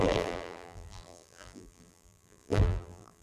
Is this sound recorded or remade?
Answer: remade